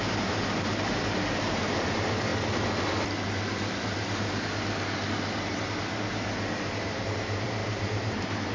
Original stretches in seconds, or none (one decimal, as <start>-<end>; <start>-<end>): 2.3-7.0

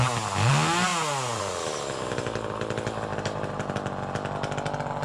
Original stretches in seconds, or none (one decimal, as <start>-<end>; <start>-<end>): 0.0-3.1; 3.7-5.0

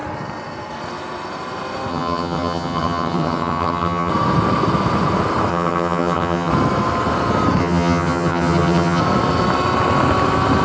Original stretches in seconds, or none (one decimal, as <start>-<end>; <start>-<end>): 0.0-1.9; 4.1-5.5; 6.5-7.6; 9.0-10.6

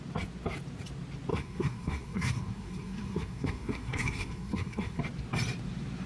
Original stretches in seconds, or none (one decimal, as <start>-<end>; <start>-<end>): 0.0-1.3; 5.0-6.1

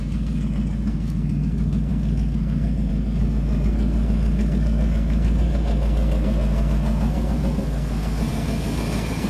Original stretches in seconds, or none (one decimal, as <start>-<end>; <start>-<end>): none

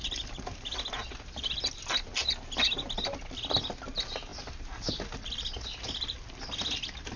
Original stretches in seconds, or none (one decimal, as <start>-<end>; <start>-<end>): 0.0-7.2